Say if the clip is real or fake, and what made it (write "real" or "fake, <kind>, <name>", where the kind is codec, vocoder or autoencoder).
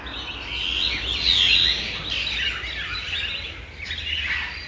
real